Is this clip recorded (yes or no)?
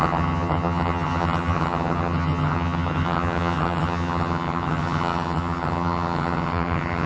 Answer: no